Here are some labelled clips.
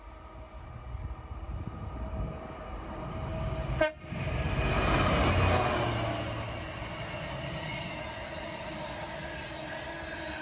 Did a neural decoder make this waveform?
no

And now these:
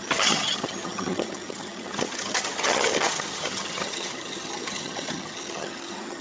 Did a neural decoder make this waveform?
yes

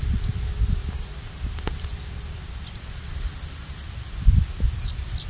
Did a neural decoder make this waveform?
no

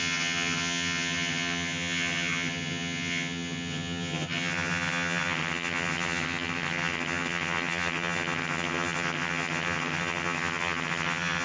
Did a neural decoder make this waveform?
yes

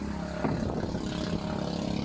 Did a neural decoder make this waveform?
no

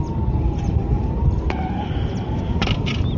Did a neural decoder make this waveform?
no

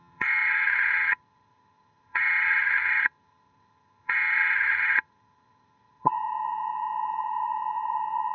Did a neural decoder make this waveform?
yes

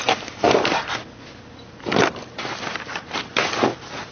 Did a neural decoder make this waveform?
no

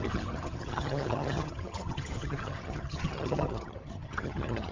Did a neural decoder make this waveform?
yes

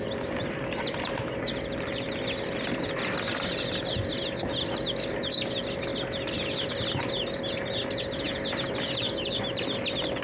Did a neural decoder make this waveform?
no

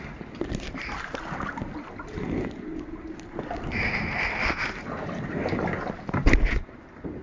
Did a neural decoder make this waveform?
no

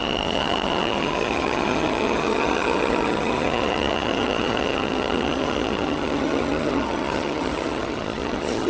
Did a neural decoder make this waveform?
yes